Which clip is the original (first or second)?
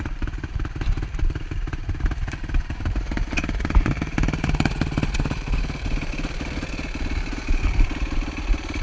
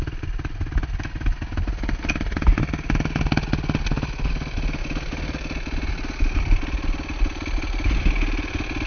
second